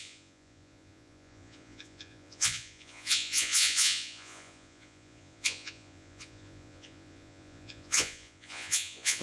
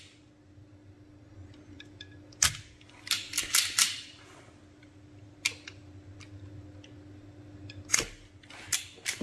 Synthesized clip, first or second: first